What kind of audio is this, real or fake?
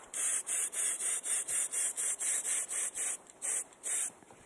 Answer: fake